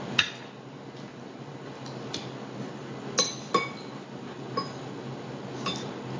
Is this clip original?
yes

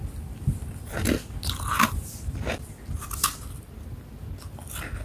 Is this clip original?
yes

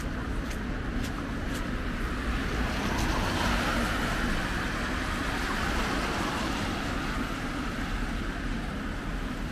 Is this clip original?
yes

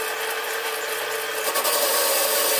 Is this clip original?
yes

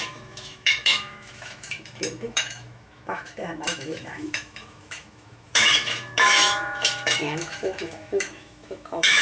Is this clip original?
no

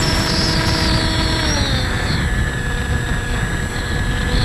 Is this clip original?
yes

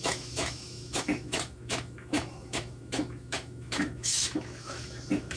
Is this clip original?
no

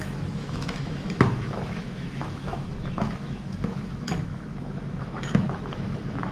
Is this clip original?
no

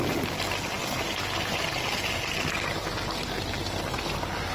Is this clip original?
yes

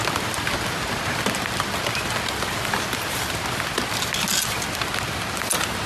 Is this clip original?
yes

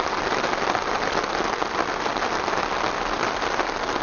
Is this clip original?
yes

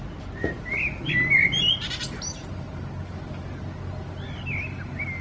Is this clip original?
yes